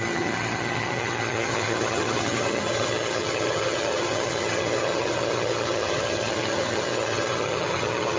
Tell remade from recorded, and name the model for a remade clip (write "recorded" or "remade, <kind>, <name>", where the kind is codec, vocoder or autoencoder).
remade, vocoder, HiFi-GAN